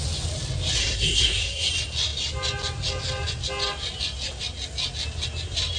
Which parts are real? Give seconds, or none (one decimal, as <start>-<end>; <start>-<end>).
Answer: 0.0-0.8; 1.7-5.8